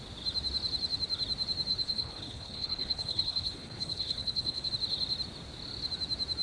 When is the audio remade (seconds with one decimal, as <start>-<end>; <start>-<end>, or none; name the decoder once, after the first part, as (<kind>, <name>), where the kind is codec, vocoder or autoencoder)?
1.7-4.7 (codec, HILCodec)